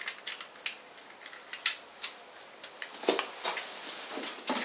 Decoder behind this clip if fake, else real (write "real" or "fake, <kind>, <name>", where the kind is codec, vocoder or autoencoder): real